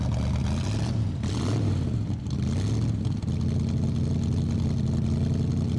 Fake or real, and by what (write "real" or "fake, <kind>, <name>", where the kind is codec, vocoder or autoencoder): real